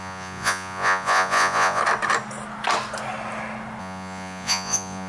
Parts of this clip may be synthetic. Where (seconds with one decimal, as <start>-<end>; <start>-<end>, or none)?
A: 0.0-1.8; 3.8-5.1